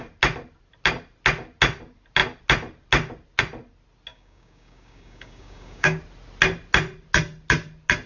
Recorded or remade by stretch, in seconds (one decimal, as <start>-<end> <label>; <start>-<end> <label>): 0.0-4.1 recorded; 4.1-6.0 remade; 6.0-8.1 recorded